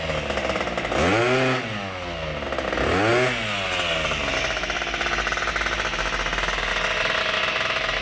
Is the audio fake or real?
real